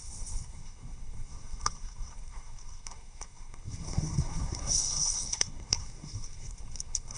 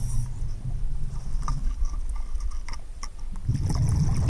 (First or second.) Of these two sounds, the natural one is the second